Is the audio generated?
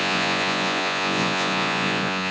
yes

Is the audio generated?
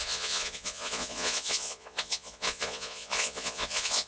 yes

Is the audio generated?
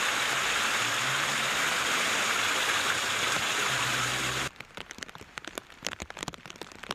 no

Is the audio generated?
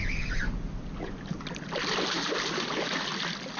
no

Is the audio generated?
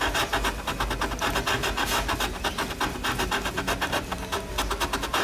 no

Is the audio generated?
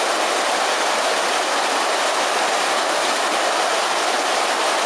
no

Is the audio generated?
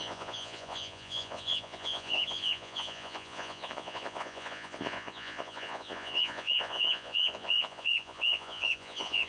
yes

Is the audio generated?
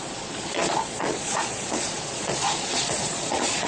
yes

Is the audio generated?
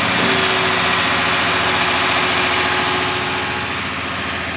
no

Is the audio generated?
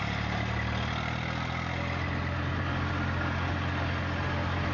no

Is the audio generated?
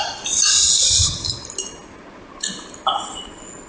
no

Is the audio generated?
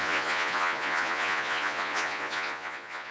yes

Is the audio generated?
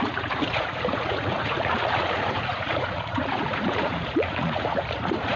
yes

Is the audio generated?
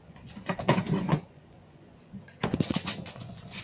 yes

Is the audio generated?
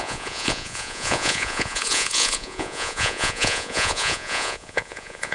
yes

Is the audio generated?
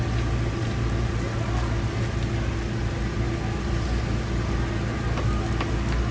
no